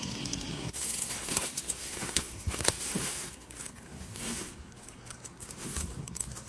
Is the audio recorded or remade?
remade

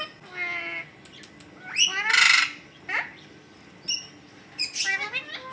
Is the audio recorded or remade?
recorded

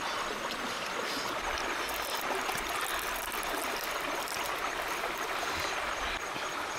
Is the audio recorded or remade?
recorded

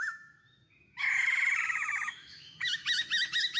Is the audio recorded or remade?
remade